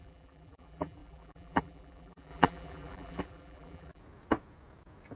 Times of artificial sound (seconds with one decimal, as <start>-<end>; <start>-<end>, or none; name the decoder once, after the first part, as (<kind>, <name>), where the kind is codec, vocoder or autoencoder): 0.0-4.0 (vocoder, BigVGAN v2)